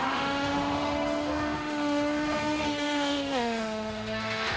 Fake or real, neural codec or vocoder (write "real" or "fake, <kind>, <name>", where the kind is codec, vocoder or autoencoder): fake, autoencoder, DAC-VAE